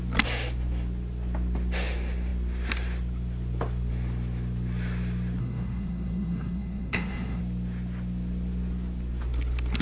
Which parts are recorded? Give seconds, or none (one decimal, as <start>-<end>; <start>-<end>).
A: 0.0-5.4; 7.4-9.8